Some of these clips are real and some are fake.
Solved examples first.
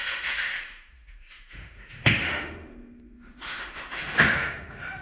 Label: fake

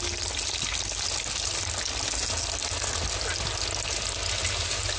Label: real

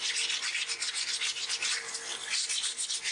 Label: real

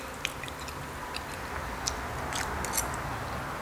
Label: real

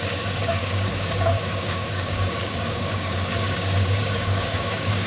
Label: fake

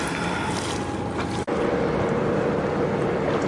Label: real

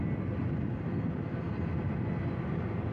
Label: real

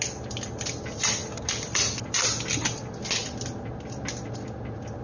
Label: real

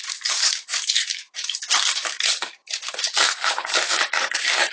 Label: fake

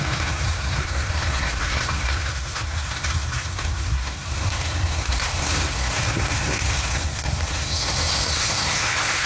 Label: fake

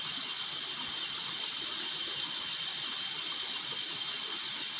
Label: real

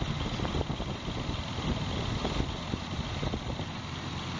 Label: real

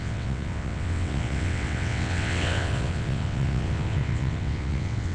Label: fake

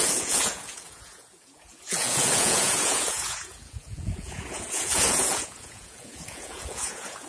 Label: fake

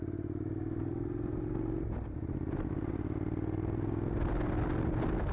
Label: real